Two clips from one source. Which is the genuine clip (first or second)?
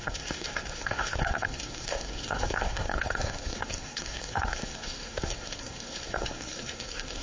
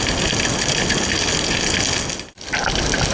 second